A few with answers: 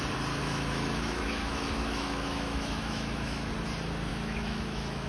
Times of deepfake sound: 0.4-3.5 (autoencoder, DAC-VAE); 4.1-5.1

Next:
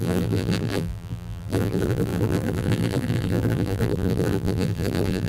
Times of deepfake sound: 0.0-5.3 (vocoder, BigVGAN v2)

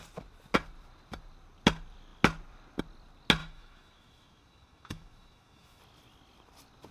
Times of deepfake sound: 3.4-5.8 (autoencoder, DAC-VAE)

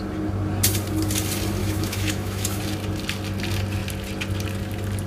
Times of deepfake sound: 1.6-2.6 (autoencoder, DAC-VAE)

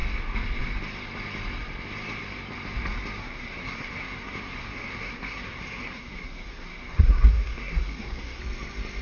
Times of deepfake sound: 3.2-8.4 (codec, SNAC)

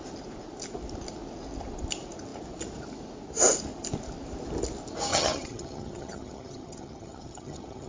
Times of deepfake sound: 5.1-7.9 (vocoder, HiFi-GAN)

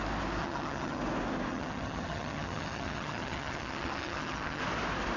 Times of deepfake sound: 0.4-1.0 (vocoder, HiFi-GAN); 1.5-4.6

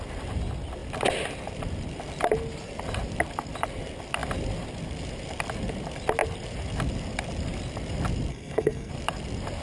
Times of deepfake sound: 8.3-8.9 (codec, SNAC)